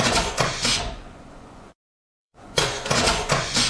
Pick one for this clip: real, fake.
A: fake